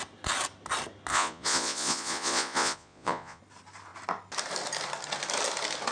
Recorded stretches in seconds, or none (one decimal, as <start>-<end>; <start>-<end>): 0.0-1.1; 3.4-5.9